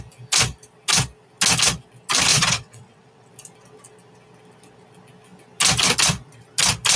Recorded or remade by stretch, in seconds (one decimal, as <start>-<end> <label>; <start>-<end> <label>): 0.0-2.3 recorded; 2.3-3.3 remade; 3.3-7.0 recorded